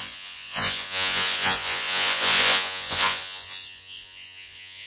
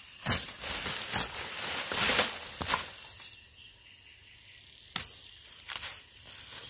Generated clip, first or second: first